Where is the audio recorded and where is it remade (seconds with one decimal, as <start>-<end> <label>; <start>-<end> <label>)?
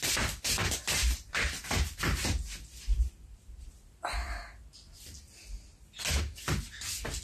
0.0-1.0 recorded; 1.0-3.7 remade; 3.7-7.2 recorded